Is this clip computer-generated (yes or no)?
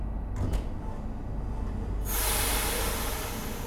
no